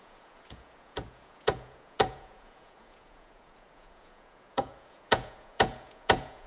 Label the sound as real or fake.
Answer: fake